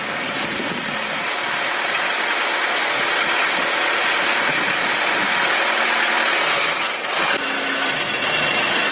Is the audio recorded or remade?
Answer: recorded